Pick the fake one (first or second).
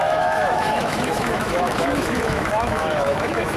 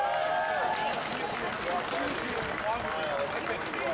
first